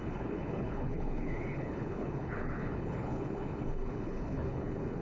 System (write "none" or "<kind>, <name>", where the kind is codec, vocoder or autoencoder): codec, HILCodec